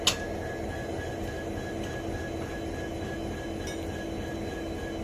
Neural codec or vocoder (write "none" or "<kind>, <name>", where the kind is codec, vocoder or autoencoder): none